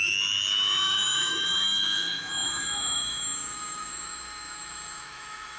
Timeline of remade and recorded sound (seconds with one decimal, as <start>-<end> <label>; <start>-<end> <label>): 0.0-5.6 remade